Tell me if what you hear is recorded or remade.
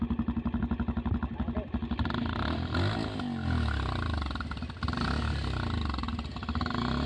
recorded